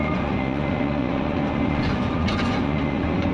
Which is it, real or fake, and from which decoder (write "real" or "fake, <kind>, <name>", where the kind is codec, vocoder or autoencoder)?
fake, vocoder, Vocos